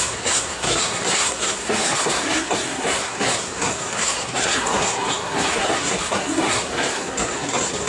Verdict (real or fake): fake